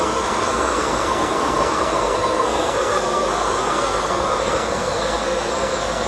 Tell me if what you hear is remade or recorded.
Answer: remade